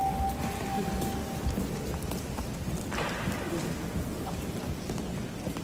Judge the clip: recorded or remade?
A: recorded